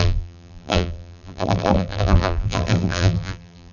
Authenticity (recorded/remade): remade